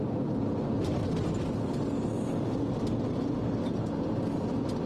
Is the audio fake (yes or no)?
no